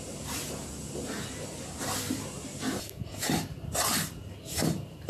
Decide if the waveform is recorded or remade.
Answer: recorded